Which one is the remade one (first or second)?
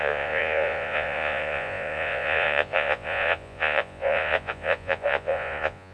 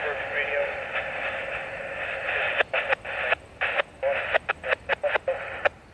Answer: first